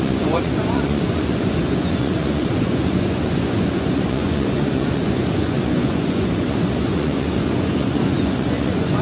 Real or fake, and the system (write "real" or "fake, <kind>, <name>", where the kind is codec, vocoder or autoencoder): fake, vocoder, Vocos